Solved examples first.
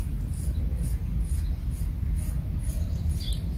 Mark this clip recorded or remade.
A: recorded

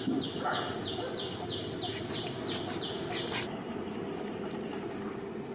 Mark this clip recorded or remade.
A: recorded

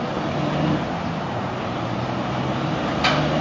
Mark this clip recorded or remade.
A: recorded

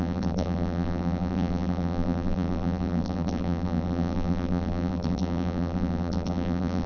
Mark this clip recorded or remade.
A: remade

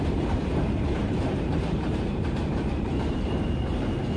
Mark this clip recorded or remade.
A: remade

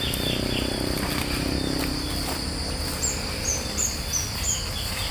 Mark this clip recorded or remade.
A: recorded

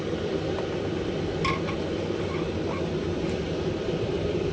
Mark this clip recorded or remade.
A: recorded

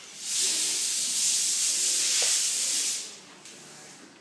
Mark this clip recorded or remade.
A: recorded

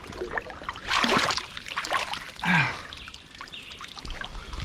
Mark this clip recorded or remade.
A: recorded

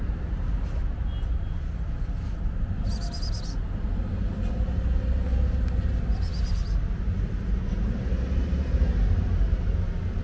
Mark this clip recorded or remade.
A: recorded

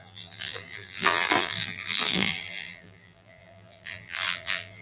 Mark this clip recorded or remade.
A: remade